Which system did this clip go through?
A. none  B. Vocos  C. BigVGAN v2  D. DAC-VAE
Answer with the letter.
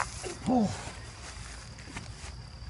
A